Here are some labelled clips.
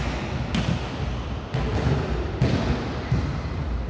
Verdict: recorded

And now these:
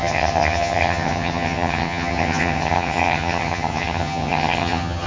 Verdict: remade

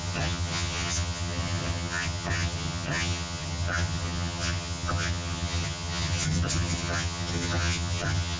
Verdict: remade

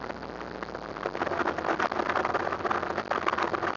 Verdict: recorded